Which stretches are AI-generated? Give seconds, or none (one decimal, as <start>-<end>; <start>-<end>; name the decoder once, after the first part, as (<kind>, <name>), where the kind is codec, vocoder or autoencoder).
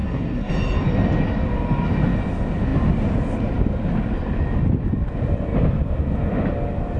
0.0-0.5 (codec, SNAC)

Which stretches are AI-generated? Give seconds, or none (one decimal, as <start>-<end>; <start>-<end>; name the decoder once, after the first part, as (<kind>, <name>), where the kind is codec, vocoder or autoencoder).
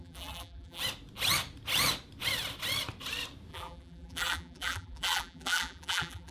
0.0-0.8 (vocoder, BigVGAN v2); 3.5-6.3